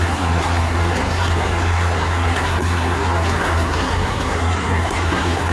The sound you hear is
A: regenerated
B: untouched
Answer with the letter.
A